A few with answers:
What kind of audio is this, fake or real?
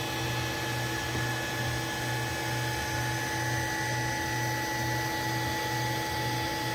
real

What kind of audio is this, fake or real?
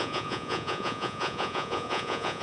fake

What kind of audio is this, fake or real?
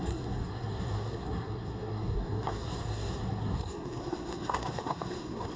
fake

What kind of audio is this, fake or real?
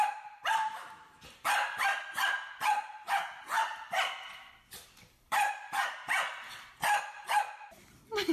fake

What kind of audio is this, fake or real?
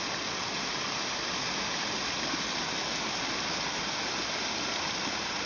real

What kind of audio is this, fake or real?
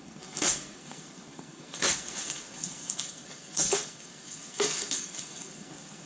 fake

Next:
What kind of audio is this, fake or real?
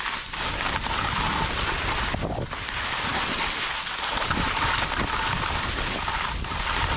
real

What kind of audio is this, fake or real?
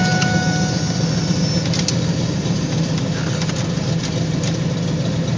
real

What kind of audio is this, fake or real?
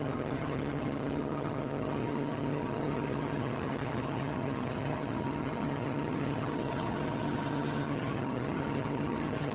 fake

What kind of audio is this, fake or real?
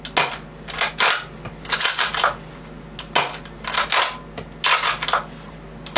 real